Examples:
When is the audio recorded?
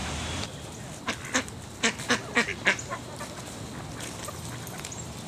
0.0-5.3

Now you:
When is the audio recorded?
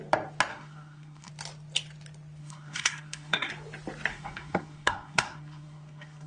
0.0-0.5; 1.3-2.4; 3.5-4.1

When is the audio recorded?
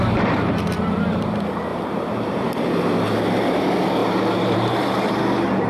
0.0-1.7; 2.6-4.0; 5.2-5.7